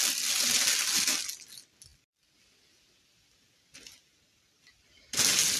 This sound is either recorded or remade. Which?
recorded